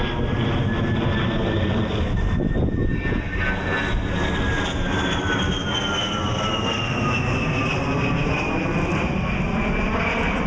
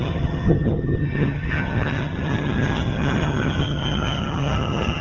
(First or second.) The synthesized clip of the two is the second